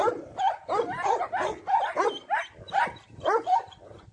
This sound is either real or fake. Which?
real